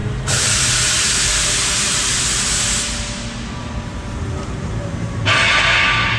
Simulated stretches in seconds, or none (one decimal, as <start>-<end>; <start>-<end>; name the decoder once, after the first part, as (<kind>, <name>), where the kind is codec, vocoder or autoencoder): 0.0-2.2 (vocoder, BigVGAN v2); 3.6-5.3